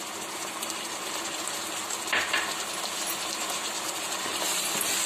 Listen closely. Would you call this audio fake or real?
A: real